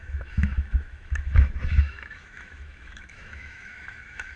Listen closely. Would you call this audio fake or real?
fake